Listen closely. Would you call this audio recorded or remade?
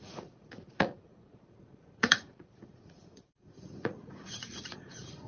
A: remade